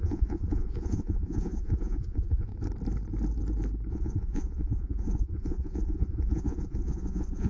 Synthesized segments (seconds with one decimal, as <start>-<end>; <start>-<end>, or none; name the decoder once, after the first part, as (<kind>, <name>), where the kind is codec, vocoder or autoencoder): 0.0-2.5 (vocoder, Vocos); 3.9-7.5